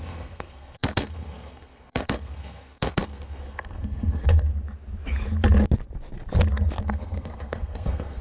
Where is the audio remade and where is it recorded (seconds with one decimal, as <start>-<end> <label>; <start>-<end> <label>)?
0.0-4.5 remade; 4.5-6.8 recorded; 6.8-8.2 remade